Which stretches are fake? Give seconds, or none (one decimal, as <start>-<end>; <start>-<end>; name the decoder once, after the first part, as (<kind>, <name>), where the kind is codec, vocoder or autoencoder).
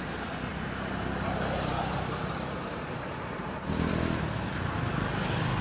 0.5-3.9 (vocoder, BigVGAN v2)